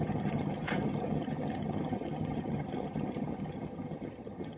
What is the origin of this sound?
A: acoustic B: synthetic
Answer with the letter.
B